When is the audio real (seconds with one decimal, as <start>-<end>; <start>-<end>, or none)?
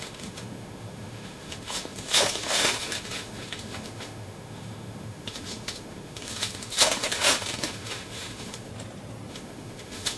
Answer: 8.7-9.3